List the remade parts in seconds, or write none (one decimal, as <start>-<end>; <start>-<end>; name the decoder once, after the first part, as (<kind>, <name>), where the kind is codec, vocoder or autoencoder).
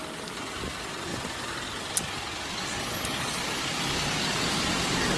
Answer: none